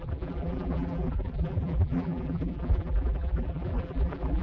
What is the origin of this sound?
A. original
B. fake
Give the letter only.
B